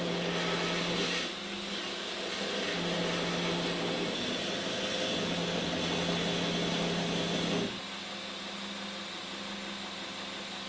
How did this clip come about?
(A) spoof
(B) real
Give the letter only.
B